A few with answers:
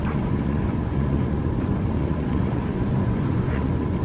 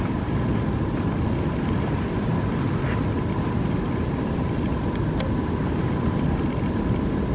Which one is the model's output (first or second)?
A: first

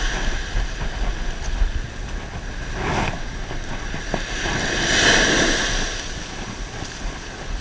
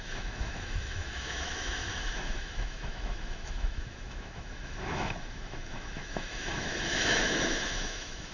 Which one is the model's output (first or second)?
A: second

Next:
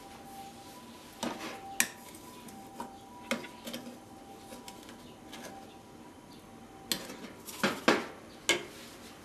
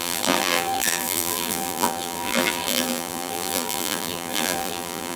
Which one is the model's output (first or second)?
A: second